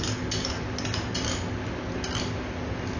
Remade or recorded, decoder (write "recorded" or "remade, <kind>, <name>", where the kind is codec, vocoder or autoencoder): recorded